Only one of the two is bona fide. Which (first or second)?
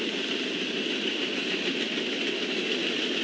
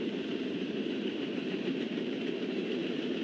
first